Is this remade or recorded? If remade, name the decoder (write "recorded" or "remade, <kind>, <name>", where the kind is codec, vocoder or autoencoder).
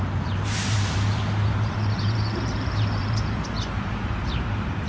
remade, vocoder, BigVGAN v2